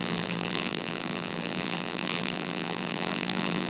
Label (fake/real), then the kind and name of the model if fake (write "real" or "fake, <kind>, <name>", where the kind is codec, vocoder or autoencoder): fake, vocoder, BigVGAN v2